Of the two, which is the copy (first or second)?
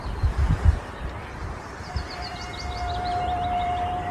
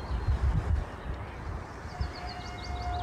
first